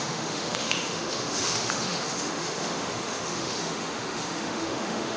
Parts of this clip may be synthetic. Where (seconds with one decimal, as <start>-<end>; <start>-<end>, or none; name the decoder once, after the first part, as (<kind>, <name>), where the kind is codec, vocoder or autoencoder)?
0.0-5.2 (autoencoder, DAC-VAE)